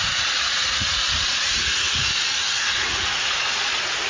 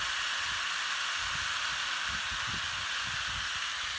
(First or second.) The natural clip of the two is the second